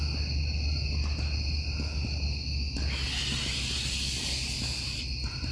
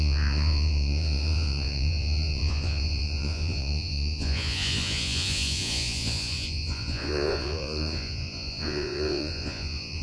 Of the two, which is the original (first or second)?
first